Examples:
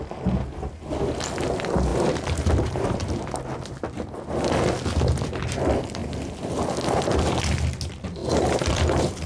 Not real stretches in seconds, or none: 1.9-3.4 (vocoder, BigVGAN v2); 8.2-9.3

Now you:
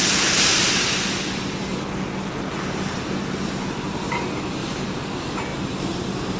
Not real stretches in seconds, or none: 0.0-0.7 (vocoder, BigVGAN v2); 4.6-5.1; 5.5-6.4

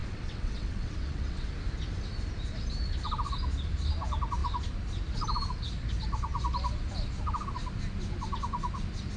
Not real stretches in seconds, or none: 0.0-1.5 (vocoder, WaveNeXt)

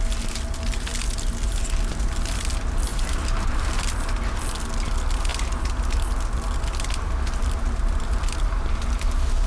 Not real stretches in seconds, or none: 2.9-3.7 (vocoder, BigVGAN v2)